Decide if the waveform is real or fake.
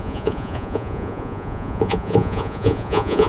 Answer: fake